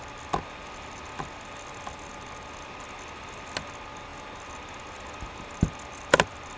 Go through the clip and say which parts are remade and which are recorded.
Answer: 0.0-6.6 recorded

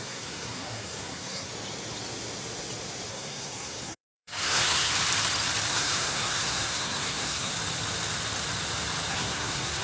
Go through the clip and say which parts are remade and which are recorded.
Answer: 0.0-1.5 remade; 1.5-3.1 recorded; 3.1-4.9 remade; 4.9-5.7 recorded; 5.7-7.5 remade; 7.5-9.1 recorded; 9.1-9.8 remade

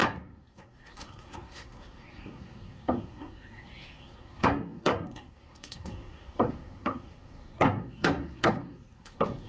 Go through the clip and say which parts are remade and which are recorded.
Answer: 0.0-9.5 remade

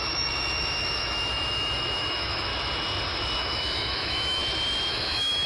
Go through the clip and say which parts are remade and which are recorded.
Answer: 0.0-2.5 remade; 2.5-3.4 recorded; 3.4-4.4 remade; 4.4-4.9 recorded; 4.9-5.5 remade